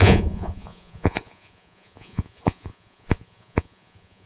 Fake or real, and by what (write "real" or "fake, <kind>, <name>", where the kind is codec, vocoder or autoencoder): fake, vocoder, Vocos